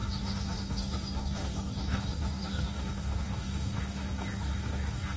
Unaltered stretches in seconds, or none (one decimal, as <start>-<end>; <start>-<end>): none